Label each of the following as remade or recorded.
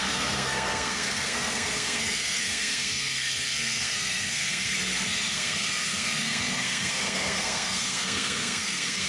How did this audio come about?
remade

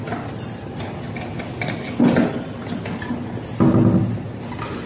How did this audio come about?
recorded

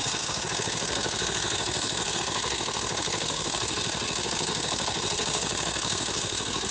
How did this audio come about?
remade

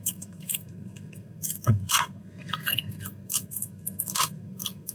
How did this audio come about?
remade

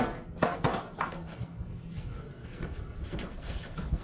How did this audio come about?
remade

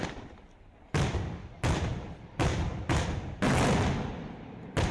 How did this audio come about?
recorded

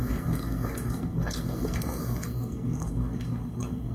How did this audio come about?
remade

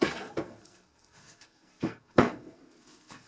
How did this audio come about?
remade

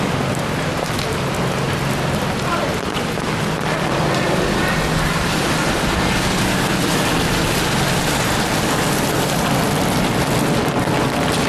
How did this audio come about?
recorded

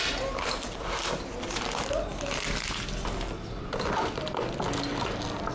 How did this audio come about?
recorded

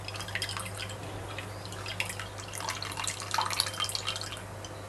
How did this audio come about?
recorded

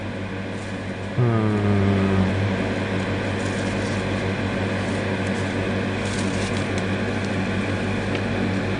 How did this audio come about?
recorded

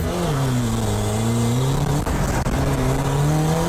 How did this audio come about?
recorded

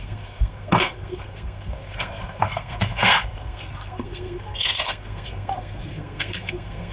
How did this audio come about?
remade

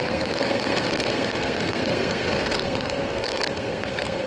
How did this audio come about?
remade